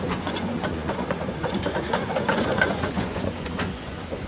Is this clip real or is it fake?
fake